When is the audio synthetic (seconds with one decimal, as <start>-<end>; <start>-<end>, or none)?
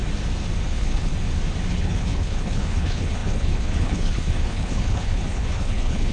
0.6-1.1; 1.7-6.1